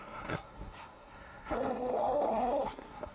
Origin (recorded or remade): remade